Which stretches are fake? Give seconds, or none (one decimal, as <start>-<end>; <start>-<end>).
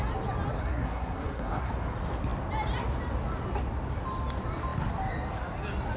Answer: 0.6-1.7